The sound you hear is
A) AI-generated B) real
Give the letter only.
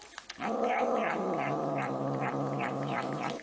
B